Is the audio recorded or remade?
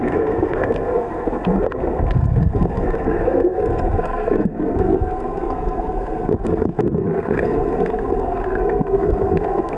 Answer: remade